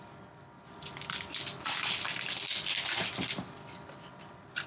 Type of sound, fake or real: real